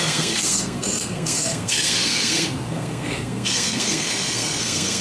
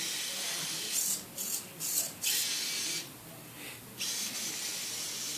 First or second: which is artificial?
first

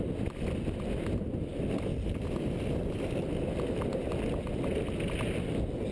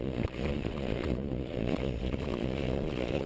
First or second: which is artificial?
second